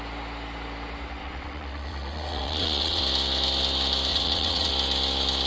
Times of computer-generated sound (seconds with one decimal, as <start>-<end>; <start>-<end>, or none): 1.2-3.0; 4.1-4.7